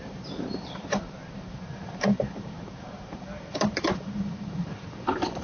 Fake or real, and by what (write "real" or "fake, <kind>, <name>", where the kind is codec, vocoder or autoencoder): fake, vocoder, BigVGAN v2